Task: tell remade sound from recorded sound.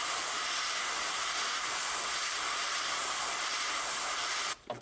recorded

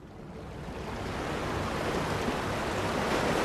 recorded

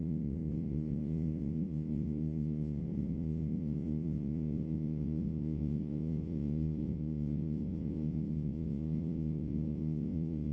remade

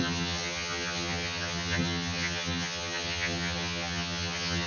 remade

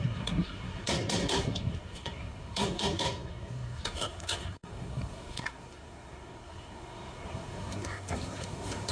remade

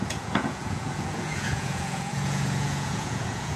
remade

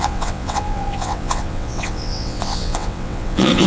remade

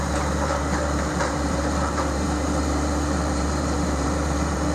remade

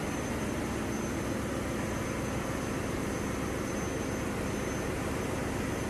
recorded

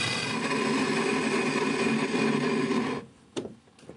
recorded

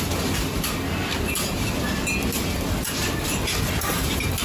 recorded